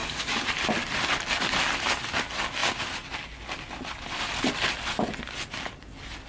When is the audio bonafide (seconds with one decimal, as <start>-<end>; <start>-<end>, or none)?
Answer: 0.7-6.3